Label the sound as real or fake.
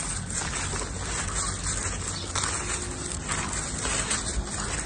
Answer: real